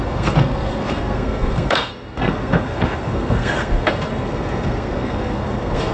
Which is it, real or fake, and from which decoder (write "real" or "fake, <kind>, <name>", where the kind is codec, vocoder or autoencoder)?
fake, codec, SNAC